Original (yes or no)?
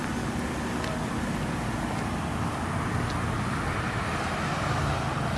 no